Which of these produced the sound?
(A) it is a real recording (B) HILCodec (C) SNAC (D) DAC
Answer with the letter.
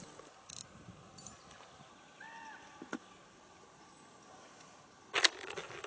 A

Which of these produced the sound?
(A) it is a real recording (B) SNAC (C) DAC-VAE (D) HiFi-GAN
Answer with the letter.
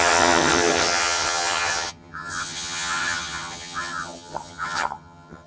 D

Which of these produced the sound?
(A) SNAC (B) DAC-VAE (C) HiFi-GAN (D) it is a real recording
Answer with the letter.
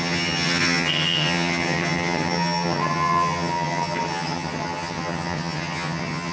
C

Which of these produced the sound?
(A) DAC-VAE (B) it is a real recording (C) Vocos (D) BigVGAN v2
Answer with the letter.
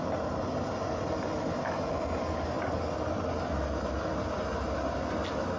B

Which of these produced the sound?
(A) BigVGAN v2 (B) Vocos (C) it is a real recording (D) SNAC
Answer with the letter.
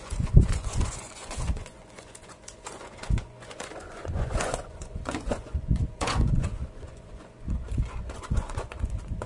B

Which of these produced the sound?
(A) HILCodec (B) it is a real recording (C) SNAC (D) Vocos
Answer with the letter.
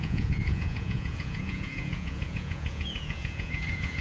D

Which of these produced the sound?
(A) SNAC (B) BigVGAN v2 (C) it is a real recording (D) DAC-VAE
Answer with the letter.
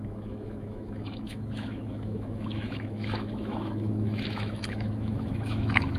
D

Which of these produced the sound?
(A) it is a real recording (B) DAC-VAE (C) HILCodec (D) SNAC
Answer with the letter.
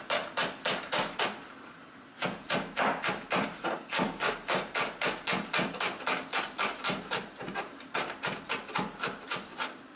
A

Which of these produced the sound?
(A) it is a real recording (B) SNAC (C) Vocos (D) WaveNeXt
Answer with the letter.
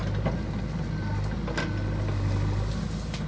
A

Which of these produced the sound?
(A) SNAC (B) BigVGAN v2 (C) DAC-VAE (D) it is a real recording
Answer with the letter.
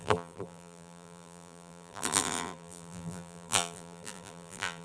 B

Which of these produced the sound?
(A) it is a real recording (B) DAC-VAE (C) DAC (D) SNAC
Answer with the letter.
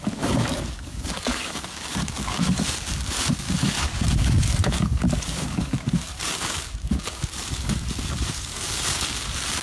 C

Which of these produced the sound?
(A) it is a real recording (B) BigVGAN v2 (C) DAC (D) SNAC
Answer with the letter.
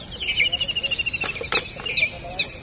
A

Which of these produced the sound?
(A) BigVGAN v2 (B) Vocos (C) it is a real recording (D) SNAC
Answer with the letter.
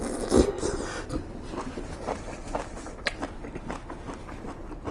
C